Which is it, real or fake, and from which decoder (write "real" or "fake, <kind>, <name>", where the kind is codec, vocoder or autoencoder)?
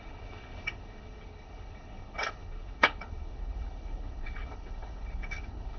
fake, codec, HILCodec